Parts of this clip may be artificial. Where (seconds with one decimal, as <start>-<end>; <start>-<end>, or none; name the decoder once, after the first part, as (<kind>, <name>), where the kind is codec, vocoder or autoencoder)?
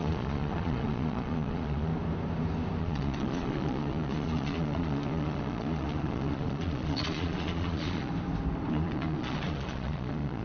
0.0-1.9 (vocoder, Vocos); 2.8-8.1; 8.7-10.4